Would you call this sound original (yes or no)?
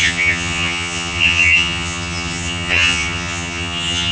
no